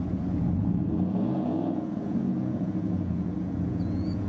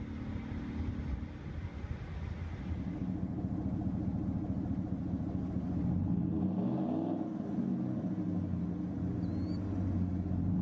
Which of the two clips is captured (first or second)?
second